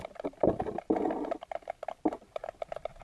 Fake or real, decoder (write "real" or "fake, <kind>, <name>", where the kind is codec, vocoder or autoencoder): real